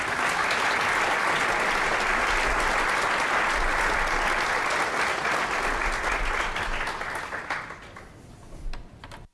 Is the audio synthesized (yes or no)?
no